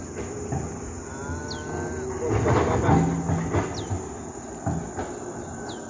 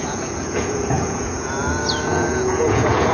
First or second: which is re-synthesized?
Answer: second